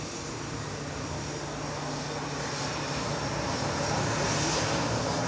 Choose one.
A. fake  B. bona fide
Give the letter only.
B